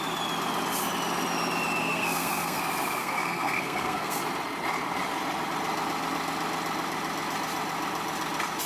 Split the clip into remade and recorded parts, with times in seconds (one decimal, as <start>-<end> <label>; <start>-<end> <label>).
0.0-1.8 recorded; 1.8-2.6 remade; 2.6-3.0 recorded; 3.0-4.2 remade; 4.2-8.7 recorded